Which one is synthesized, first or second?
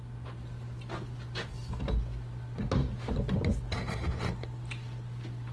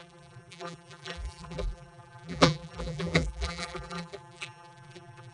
second